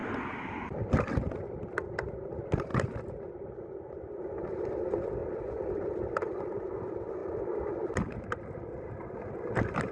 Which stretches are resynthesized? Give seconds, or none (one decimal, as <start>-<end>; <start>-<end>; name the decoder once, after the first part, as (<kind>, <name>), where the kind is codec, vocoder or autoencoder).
0.0-2.7 (vocoder, BigVGAN v2); 3.2-9.9